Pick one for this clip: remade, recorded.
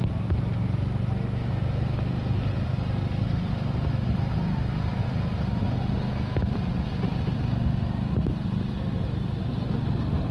recorded